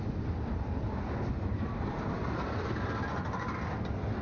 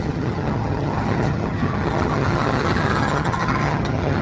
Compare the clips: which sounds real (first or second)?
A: first